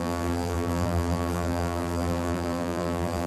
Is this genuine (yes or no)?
no